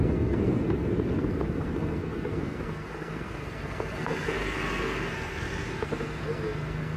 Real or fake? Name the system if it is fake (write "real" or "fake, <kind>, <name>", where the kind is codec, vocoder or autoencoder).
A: fake, codec, SNAC